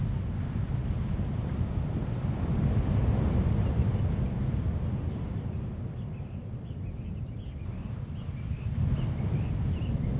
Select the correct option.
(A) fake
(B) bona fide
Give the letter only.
B